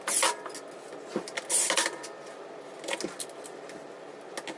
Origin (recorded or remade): recorded